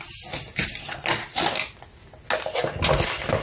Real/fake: real